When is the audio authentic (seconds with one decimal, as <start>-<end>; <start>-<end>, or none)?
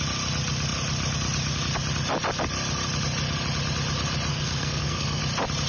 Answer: 0.0-4.3; 5.2-5.7